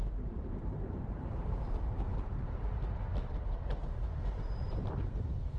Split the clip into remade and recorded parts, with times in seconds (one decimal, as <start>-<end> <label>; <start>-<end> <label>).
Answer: 0.0-5.6 remade